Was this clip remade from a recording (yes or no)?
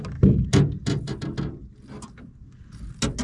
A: no